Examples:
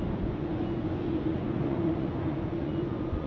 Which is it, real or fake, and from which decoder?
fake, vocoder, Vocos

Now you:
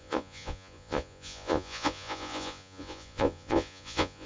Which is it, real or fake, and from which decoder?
fake, vocoder, Vocos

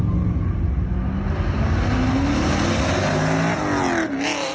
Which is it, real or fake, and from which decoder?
real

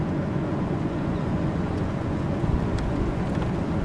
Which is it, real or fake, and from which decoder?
fake, vocoder, Vocos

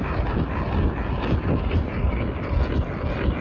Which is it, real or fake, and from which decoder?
real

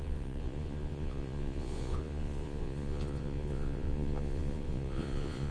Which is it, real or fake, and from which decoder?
fake, vocoder, Vocos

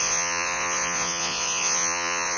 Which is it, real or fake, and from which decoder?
fake, vocoder, Vocos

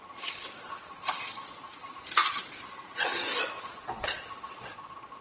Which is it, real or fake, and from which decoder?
fake, vocoder, Vocos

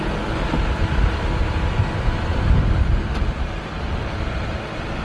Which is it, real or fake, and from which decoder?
real